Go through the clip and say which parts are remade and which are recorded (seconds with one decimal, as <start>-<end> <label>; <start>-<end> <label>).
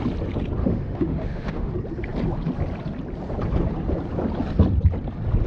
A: 0.0-0.6 recorded; 0.6-1.7 remade; 1.7-5.5 recorded